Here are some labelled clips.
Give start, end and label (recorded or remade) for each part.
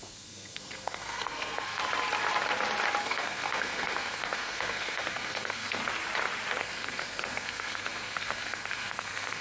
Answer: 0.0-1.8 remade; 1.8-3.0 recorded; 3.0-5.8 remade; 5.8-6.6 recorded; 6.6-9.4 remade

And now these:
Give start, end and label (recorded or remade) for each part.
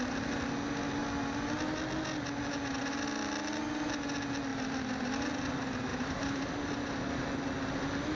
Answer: 0.0-4.5 recorded; 4.5-5.1 remade; 5.1-5.9 recorded; 5.9-6.5 remade; 6.5-8.1 recorded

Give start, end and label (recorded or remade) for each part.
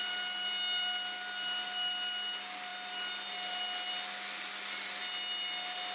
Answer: 0.0-5.9 recorded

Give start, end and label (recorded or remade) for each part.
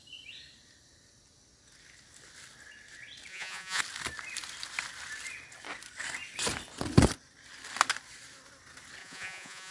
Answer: 0.0-3.3 recorded; 3.3-3.8 remade; 3.8-9.0 recorded; 9.0-9.7 remade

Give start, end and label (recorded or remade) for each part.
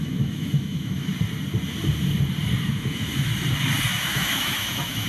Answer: 0.0-1.1 remade; 1.1-2.6 recorded; 2.6-3.3 remade; 3.3-3.9 recorded; 3.9-5.1 remade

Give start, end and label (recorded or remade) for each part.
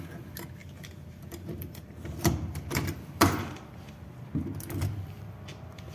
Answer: 0.0-0.6 recorded; 0.6-4.1 remade; 4.1-5.9 recorded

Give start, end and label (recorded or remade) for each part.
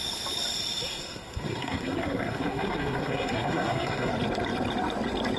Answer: 0.0-0.9 recorded; 0.9-4.1 remade; 4.1-5.4 recorded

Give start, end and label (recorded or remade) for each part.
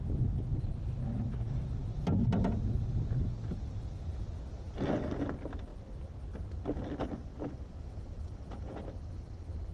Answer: 0.0-7.3 recorded; 7.3-8.8 remade; 8.8-9.7 recorded